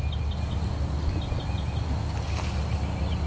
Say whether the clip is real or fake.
real